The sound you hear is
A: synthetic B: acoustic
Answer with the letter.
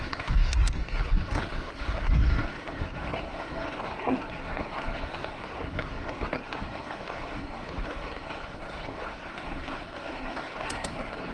A